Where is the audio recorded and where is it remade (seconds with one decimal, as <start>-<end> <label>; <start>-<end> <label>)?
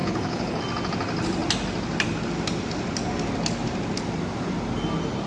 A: 0.0-0.6 remade; 0.6-5.3 recorded